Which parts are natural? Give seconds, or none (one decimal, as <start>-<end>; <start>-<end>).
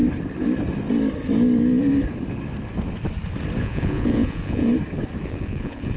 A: 0.0-3.6; 4.7-5.2